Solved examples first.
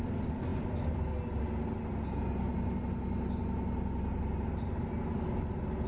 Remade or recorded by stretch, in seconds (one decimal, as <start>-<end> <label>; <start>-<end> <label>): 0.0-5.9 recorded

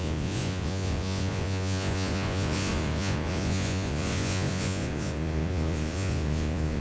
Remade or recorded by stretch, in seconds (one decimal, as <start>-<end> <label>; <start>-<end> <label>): 0.0-6.8 remade

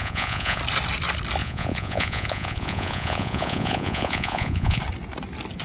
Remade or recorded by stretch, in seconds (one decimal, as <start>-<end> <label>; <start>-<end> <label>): 0.0-0.6 remade; 0.6-1.4 recorded; 1.4-4.8 remade; 4.8-5.6 recorded